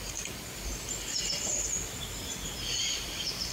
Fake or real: fake